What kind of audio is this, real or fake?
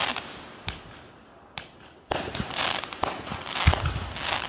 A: real